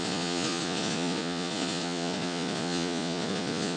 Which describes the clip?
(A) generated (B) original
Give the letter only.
A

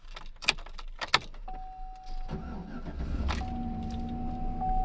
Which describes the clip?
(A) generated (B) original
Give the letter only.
B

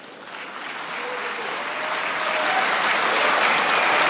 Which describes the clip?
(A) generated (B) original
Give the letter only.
B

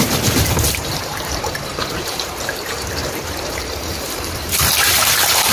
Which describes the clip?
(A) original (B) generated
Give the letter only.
B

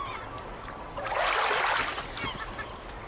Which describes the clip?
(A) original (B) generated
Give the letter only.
A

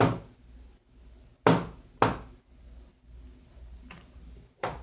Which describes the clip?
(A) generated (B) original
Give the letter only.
B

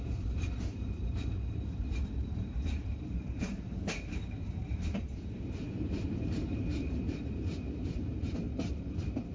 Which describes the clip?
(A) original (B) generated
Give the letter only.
B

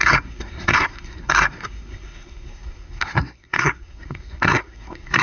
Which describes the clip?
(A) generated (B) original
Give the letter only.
A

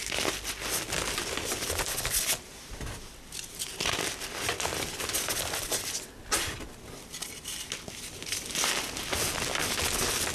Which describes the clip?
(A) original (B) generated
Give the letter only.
A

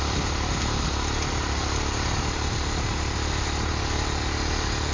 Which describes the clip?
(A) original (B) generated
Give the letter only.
A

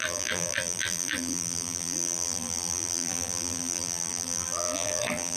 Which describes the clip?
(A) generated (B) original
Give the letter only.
A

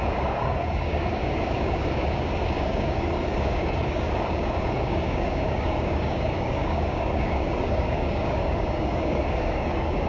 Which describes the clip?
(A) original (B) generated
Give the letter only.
B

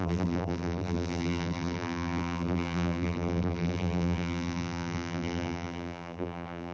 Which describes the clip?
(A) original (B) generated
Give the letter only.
B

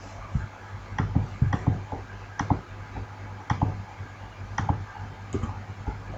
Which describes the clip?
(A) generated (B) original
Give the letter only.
B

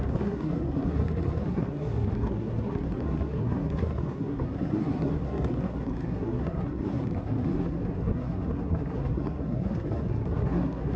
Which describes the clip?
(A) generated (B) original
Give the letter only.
A